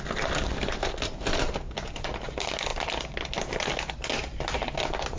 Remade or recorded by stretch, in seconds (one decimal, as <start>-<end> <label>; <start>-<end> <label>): 0.0-5.2 recorded